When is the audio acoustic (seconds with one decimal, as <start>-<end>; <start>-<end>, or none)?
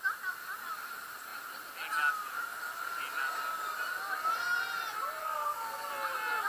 0.0-5.2; 5.9-6.5